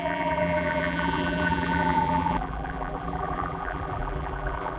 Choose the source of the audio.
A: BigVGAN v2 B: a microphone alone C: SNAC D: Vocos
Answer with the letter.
A